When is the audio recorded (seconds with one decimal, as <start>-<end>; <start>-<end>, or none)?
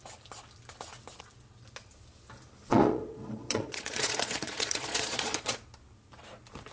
0.0-2.7; 5.5-6.7